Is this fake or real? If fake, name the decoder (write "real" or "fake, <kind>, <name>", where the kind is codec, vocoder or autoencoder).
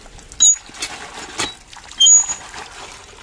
real